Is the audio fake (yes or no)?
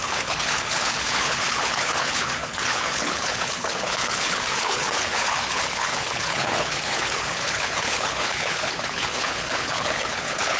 yes